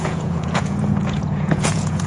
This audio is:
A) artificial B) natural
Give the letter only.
A